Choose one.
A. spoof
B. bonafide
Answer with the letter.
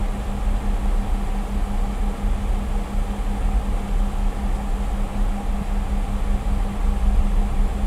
B